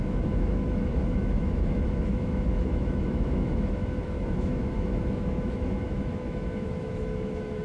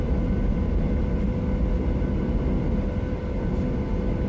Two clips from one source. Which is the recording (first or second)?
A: second